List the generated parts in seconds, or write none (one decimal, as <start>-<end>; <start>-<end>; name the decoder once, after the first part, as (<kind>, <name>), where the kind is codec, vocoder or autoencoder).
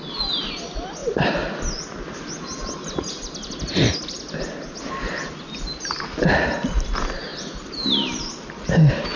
none